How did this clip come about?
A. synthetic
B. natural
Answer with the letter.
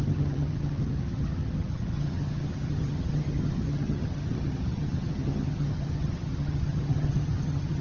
A